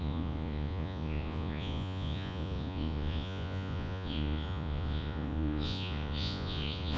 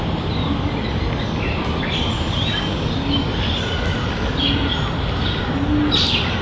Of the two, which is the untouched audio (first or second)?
second